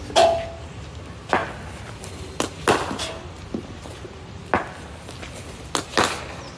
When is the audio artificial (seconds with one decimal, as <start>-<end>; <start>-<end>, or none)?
none